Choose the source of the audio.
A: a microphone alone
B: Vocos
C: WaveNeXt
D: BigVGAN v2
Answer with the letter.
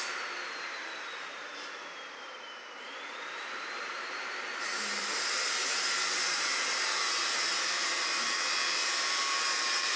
D